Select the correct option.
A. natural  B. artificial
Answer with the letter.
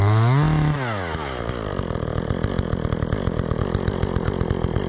A